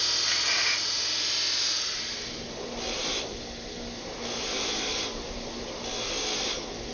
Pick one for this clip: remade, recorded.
recorded